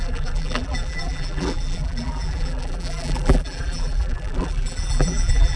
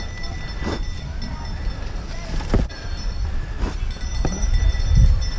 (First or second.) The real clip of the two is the second